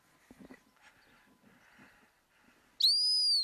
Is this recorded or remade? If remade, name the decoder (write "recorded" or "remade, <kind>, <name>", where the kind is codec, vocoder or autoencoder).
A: recorded